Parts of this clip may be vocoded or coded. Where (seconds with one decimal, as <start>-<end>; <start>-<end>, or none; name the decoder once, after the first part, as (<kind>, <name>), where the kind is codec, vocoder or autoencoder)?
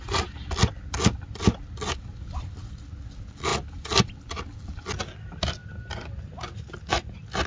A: none